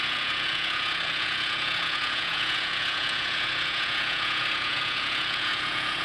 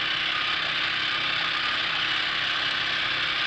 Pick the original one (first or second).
second